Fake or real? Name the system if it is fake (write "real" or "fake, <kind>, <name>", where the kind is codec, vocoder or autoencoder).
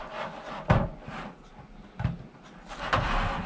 real